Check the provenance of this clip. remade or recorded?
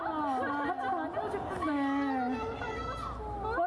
recorded